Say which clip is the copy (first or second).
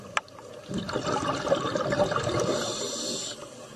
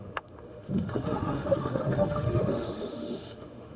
second